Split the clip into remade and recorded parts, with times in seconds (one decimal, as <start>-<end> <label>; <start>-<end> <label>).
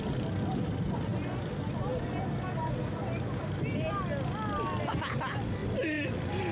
0.0-6.5 recorded